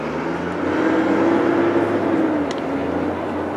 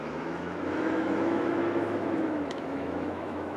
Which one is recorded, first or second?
first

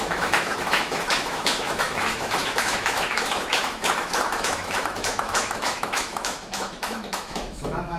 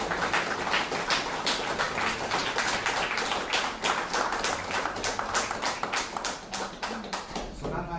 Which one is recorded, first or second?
second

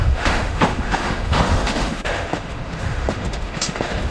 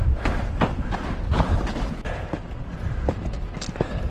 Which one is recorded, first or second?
second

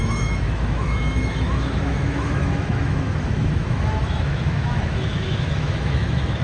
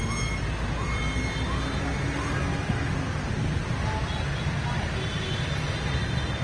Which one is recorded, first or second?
second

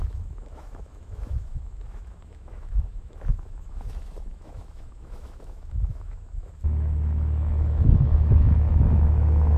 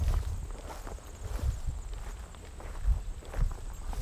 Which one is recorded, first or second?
second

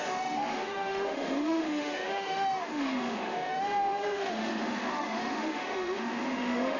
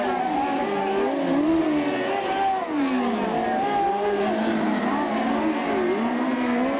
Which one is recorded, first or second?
second